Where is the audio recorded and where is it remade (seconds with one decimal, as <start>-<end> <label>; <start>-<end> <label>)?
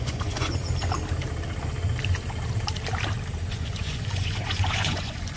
0.0-0.6 remade; 0.6-3.5 recorded; 3.5-5.4 remade